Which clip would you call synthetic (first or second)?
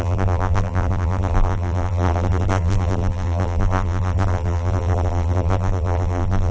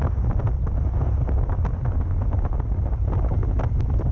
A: first